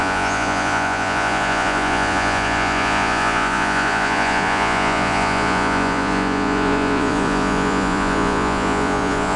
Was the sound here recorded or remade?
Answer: remade